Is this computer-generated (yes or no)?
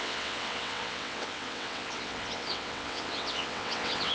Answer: yes